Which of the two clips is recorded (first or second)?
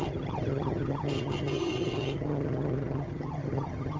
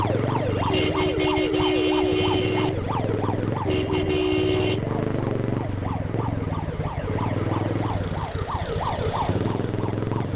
second